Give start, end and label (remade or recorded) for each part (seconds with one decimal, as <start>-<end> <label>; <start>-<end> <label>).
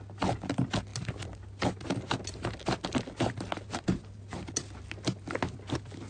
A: 0.0-6.1 recorded